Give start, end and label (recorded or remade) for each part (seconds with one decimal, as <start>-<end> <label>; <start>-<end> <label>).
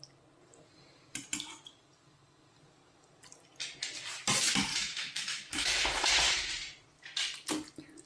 0.0-4.7 recorded; 4.7-6.1 remade; 6.1-8.1 recorded